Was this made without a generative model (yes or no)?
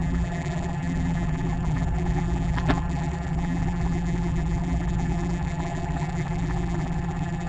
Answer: no